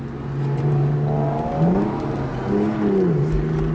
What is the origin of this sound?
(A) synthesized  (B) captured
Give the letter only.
B